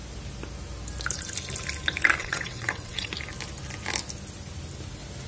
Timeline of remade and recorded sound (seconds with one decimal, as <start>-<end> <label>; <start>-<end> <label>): 0.0-2.2 recorded; 2.2-3.1 remade; 3.1-5.3 recorded